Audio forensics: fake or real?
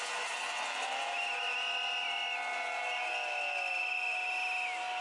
real